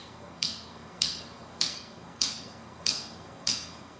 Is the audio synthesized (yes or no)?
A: yes